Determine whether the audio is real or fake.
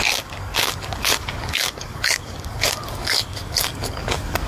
fake